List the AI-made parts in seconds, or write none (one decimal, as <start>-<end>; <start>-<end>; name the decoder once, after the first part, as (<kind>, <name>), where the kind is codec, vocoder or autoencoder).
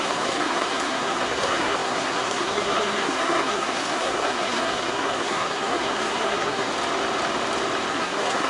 0.0-6.7 (codec, SNAC); 7.9-8.5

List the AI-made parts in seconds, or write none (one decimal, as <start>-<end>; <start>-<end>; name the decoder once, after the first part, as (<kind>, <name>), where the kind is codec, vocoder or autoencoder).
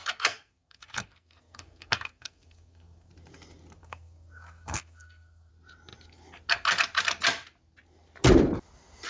0.0-3.1 (codec, SNAC); 3.8-5.5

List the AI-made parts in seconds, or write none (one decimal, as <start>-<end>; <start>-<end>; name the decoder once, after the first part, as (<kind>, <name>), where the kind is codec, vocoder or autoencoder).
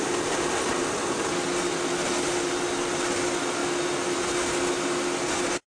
none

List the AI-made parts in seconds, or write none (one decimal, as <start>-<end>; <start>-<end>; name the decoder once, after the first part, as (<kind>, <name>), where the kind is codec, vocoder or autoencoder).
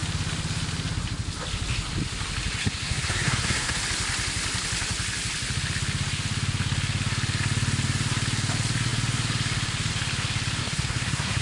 2.6-3.8 (codec, SNAC); 10.6-11.4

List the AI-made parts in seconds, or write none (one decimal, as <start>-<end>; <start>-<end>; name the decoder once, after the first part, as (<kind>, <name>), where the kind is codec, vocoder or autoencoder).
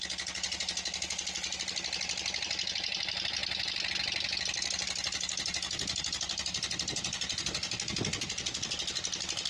none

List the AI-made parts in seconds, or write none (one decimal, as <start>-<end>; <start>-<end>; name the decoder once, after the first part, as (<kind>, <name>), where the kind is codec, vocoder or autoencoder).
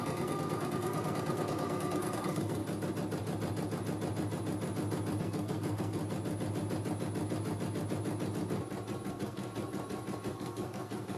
0.0-2.6 (codec, SNAC); 5.2-6.0; 9.1-9.5; 10.3-11.2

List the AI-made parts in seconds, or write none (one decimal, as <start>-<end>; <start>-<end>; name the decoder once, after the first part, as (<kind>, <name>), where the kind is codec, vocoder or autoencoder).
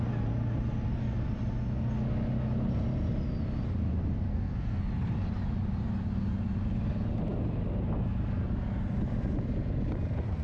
4.3-4.8 (codec, SNAC)